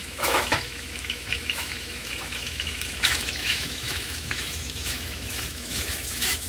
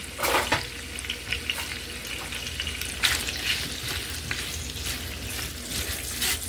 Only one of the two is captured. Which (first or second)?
second